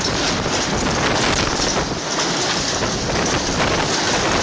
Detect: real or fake real